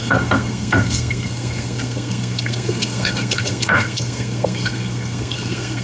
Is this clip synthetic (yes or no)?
yes